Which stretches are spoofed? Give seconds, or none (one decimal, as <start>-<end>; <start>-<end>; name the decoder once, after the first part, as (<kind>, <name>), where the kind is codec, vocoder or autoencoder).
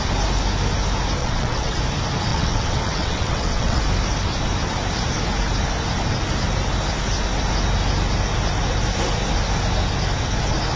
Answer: 1.2-1.8 (vocoder, WaveNeXt); 2.3-3.8